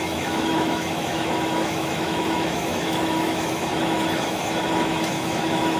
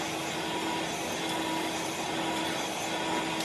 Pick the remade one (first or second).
first